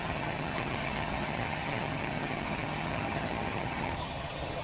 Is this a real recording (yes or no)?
no